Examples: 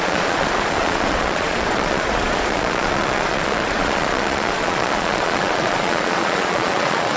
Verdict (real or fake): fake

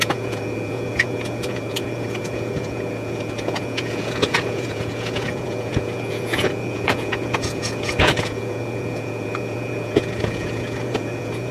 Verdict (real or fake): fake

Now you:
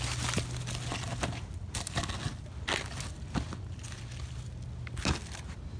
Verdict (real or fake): real